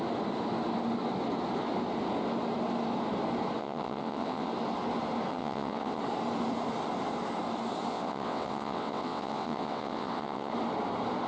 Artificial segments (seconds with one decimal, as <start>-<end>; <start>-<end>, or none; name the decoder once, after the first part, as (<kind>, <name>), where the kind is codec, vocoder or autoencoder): 3.6-4.5 (vocoder, WaveNeXt); 5.3-6.0; 7.9-10.5